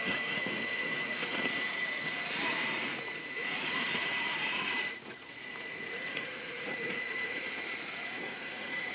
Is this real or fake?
fake